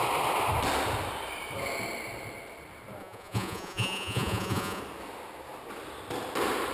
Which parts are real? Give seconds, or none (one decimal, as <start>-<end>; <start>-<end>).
0.0-3.0; 4.8-6.7

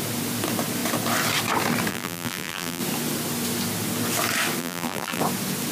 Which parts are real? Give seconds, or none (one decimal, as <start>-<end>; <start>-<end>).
0.0-1.9; 2.8-4.6; 5.2-5.7

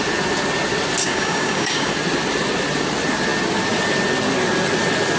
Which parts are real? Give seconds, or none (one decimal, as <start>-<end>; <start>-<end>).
0.0-1.0; 1.9-5.2

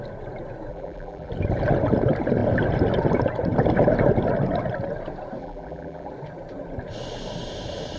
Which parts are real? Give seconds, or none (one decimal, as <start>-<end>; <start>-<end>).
0.0-0.7; 1.3-5.4; 6.1-8.0

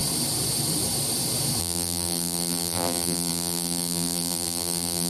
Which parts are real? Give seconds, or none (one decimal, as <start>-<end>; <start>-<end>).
0.0-1.6